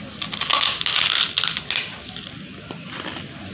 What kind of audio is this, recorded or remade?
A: recorded